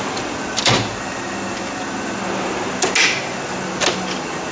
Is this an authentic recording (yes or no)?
yes